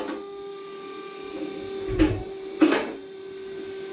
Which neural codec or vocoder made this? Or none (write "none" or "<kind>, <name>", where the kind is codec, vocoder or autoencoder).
none